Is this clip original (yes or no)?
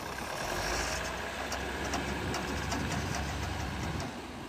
yes